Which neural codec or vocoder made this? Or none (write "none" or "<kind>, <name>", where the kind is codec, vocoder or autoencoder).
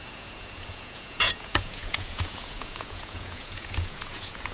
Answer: vocoder, Vocos